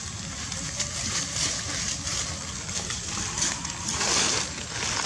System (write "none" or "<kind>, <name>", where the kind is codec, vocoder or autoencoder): none